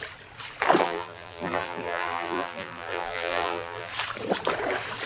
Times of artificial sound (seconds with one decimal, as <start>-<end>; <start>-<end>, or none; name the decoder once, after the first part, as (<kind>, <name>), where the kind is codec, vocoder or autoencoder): 0.8-3.9 (vocoder, BigVGAN v2)